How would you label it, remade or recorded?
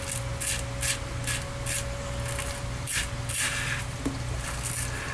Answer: recorded